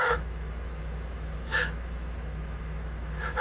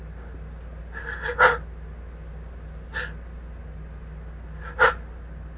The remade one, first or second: first